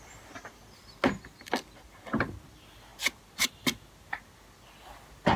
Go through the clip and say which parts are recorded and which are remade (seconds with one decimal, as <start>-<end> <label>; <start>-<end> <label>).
0.0-5.4 recorded